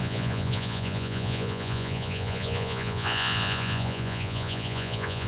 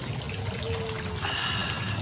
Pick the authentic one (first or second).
second